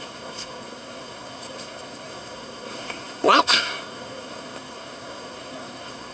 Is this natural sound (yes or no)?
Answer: no